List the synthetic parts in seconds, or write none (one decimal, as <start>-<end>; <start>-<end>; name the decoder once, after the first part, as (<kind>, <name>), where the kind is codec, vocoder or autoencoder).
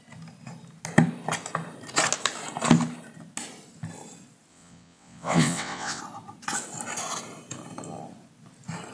4.5-6.0 (vocoder, WaveNeXt)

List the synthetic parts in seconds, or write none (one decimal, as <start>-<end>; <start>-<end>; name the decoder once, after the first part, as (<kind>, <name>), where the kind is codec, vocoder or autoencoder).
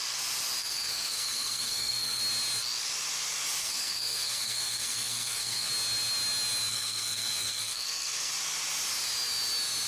0.6-2.2 (codec, SNAC); 3.6-5.7; 6.7-8.3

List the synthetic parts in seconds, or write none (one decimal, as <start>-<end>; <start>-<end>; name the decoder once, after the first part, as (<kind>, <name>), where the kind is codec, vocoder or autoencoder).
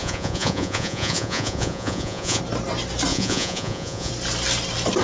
0.0-2.4 (vocoder, Vocos); 3.1-4.1